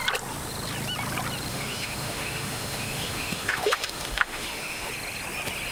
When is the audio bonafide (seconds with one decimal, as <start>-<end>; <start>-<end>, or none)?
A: 0.0-1.5; 4.9-5.7